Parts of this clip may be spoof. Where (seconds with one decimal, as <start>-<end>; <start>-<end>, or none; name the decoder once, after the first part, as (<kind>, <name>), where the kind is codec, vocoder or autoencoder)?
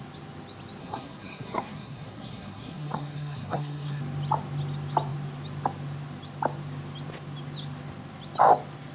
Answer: 0.8-4.0 (codec, SNAC)